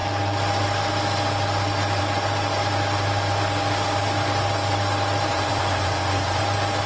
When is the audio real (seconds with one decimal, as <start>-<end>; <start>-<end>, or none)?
0.0-5.3; 6.4-6.9